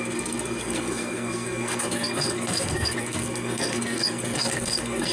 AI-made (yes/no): yes